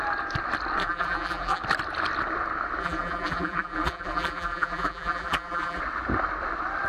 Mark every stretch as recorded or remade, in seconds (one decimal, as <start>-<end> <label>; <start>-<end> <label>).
0.0-0.8 recorded; 0.8-1.6 remade; 1.6-2.8 recorded; 2.8-5.8 remade; 5.8-6.9 recorded